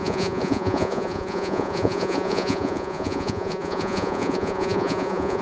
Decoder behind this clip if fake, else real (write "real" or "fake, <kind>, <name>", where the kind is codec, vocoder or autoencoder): fake, vocoder, Vocos